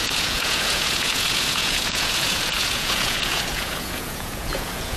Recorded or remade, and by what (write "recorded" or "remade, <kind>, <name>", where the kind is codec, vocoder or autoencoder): remade, vocoder, Vocos